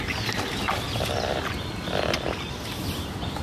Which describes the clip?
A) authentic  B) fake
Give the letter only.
A